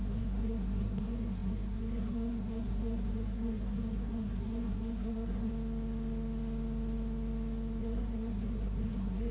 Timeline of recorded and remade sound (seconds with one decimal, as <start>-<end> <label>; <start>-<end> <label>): 0.0-5.5 remade; 5.5-7.8 recorded; 7.8-9.3 remade